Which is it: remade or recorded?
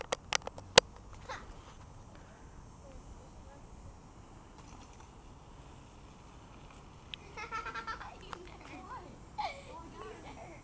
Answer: recorded